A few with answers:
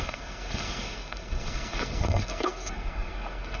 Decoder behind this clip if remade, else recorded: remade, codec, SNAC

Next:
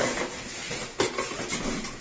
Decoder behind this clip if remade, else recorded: recorded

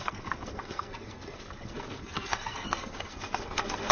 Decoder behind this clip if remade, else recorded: remade, codec, SNAC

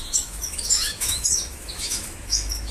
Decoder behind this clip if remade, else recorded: remade, autoencoder, DAC-VAE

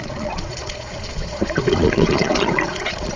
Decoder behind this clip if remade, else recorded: remade, vocoder, Vocos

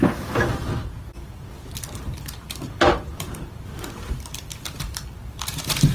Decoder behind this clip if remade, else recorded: remade, vocoder, BigVGAN v2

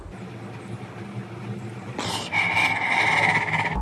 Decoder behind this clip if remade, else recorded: recorded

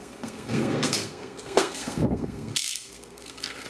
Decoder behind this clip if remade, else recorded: remade, codec, SNAC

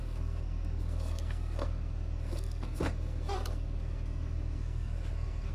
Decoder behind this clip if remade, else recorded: remade, codec, SNAC